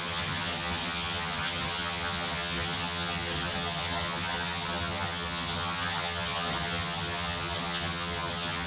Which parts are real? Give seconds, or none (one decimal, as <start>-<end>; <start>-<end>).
none